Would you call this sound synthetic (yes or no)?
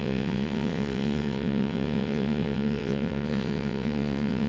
yes